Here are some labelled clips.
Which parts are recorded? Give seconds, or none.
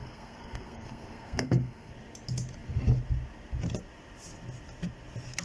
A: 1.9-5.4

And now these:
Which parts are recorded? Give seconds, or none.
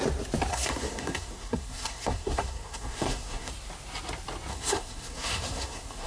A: 0.0-0.5; 3.5-4.5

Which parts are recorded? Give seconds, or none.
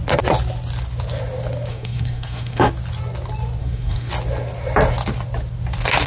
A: 0.0-1.7; 2.7-3.6; 4.1-6.1